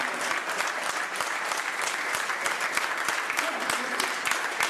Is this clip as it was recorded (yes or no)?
yes